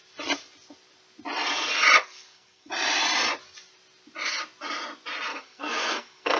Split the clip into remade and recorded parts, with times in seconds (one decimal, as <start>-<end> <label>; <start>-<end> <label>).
0.0-2.0 recorded; 2.0-2.7 remade; 2.7-5.3 recorded; 5.3-6.4 remade